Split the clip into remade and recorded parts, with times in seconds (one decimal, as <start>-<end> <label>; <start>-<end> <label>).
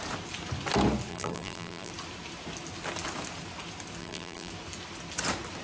0.0-1.1 recorded; 1.1-1.9 remade; 1.9-4.0 recorded; 4.0-4.5 remade; 4.5-5.6 recorded